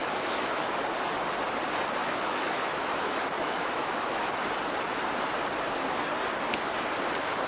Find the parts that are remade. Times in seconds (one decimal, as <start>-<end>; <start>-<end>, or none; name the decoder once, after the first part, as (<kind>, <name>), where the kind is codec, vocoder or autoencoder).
0.0-0.7 (autoencoder, DAC-VAE); 2.0-4.3